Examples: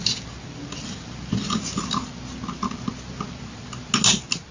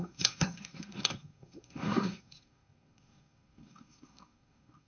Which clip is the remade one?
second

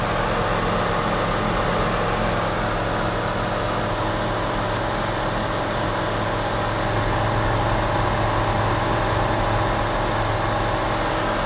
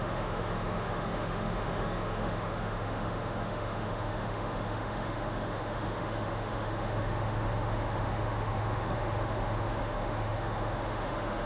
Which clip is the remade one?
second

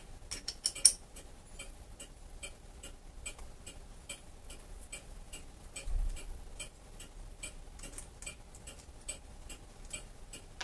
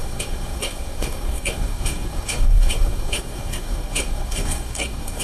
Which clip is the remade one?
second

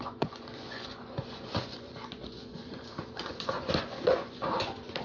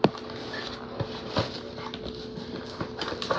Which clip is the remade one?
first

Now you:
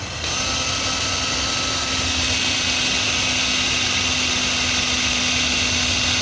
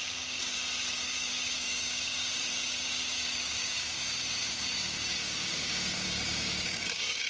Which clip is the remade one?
second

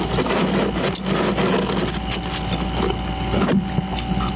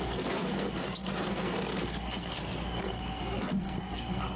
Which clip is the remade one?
second